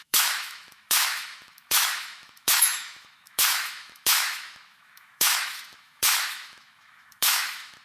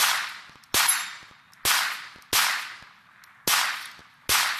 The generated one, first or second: first